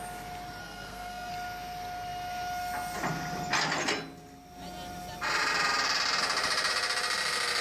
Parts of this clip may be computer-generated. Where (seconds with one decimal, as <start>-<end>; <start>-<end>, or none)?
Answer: 0.6-1.3